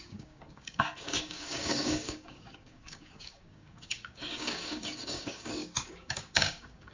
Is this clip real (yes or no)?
no